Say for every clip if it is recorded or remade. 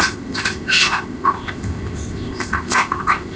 remade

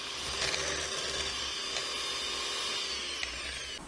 recorded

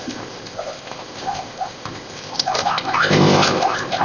remade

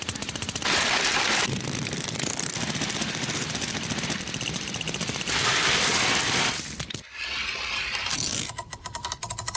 remade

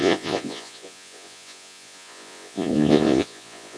remade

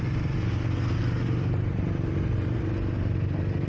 recorded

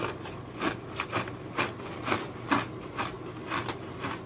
recorded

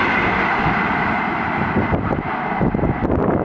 recorded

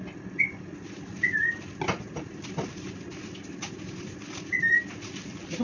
recorded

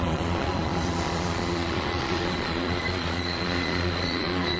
remade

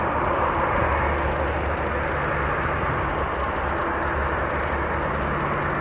recorded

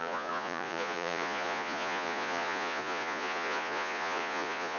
remade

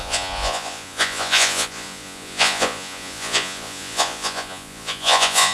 remade